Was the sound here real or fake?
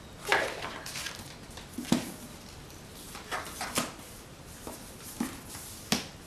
real